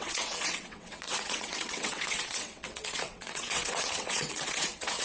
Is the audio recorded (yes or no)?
no